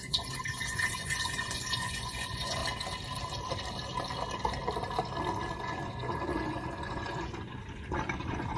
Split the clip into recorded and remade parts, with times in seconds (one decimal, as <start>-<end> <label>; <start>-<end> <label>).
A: 0.0-2.6 remade; 2.6-5.6 recorded; 5.6-8.6 remade